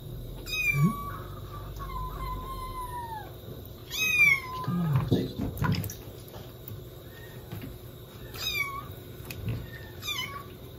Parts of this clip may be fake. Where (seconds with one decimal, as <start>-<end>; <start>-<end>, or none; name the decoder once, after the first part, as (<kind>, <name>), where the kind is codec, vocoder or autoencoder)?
0.0-1.0 (vocoder, BigVGAN v2); 1.9-2.7; 3.4-3.8; 8.9-10.8